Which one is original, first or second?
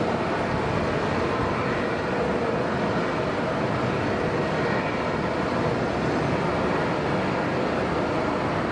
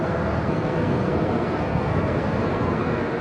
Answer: first